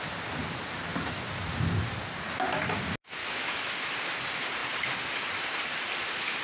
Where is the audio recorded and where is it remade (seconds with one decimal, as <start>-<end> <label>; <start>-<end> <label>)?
0.0-3.2 recorded; 3.2-3.9 remade; 3.9-6.4 recorded